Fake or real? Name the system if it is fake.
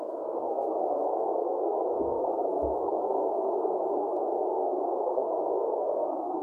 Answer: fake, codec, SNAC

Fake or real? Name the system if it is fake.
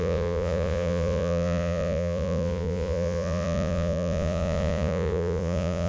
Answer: fake, vocoder, Vocos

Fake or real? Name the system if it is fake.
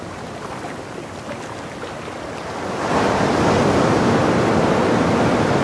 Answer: real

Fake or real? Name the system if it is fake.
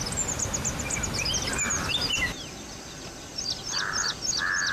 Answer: real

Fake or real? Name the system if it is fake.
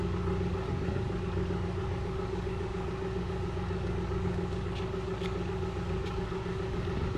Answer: fake, codec, DAC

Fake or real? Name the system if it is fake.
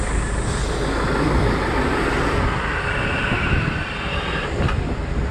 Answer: fake, vocoder, BigVGAN v2